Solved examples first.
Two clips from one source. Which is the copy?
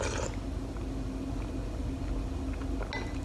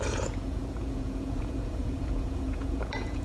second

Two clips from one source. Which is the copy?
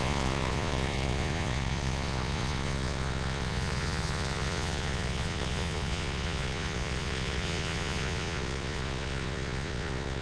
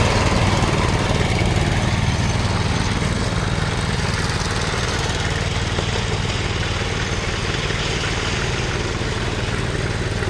first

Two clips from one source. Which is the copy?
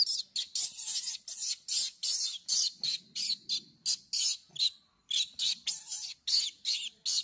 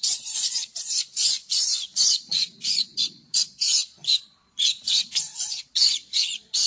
second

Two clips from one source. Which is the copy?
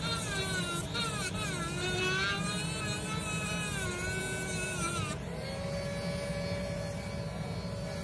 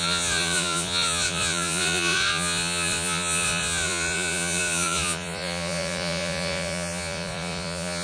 second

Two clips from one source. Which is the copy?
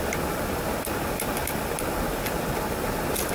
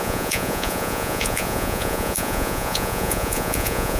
second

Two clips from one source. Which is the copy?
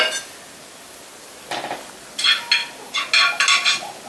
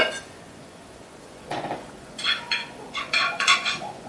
second